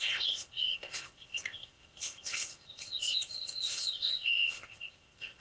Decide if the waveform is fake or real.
fake